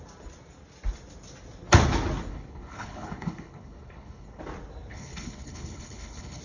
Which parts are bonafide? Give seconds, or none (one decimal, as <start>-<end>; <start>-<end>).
0.0-2.3; 4.4-4.9